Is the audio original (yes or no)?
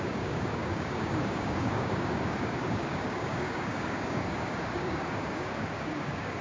no